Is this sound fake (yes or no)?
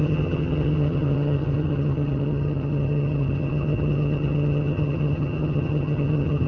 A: yes